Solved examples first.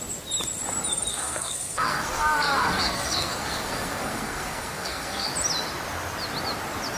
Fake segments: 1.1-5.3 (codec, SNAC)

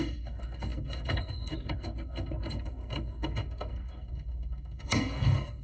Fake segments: 0.0-5.6 (codec, SNAC)

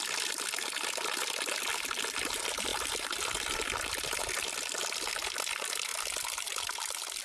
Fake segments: none

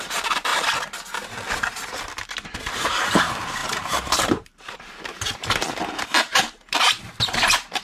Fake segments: 0.0-0.5 (vocoder, BigVGAN v2); 2.7-7.8